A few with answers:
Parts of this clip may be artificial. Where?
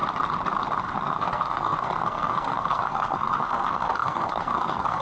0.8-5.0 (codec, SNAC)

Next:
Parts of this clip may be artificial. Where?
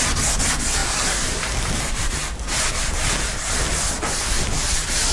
none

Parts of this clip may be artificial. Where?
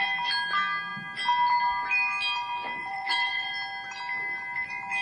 2.8-3.5 (vocoder, Vocos)